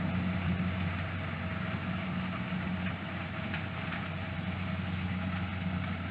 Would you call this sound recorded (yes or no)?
yes